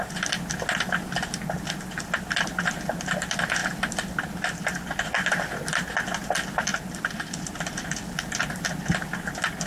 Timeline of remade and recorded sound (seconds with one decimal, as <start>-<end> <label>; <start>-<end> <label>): 0.0-3.6 recorded; 3.6-4.8 remade; 4.8-9.7 recorded